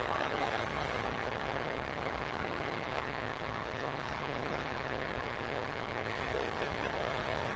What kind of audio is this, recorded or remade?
remade